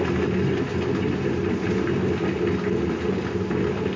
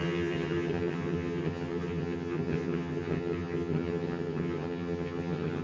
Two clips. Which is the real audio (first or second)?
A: first